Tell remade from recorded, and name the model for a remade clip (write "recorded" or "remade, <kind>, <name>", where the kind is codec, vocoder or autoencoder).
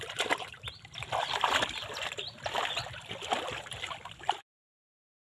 recorded